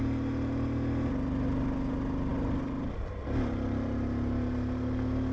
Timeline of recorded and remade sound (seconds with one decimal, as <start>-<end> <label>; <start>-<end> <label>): 0.0-5.3 recorded